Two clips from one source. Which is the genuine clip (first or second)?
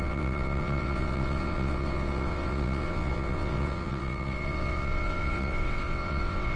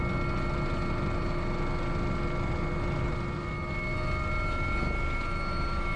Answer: second